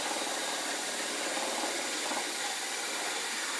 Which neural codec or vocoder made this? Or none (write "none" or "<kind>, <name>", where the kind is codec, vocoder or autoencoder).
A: vocoder, BigVGAN v2